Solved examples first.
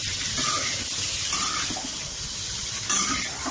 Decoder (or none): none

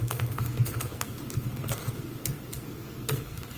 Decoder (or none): codec, SNAC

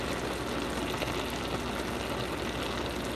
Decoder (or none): none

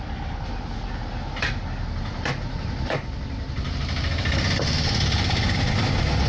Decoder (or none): none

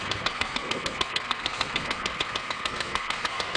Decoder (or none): codec, SNAC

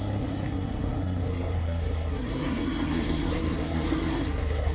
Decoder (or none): codec, SNAC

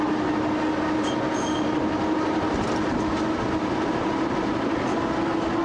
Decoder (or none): none